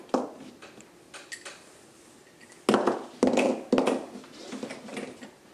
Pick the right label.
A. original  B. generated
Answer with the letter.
A